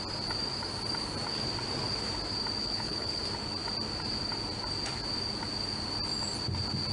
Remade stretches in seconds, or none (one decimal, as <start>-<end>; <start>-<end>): 2.6-3.2